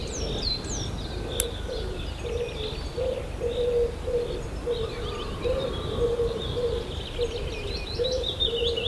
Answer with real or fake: real